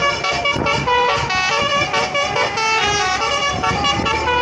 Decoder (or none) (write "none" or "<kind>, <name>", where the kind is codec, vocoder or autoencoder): none